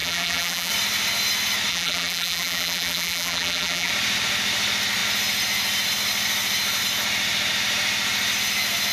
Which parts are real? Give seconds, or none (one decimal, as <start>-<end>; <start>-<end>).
0.7-1.7; 3.9-8.9